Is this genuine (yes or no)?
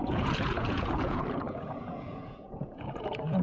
no